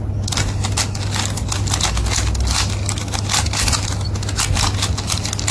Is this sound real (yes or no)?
yes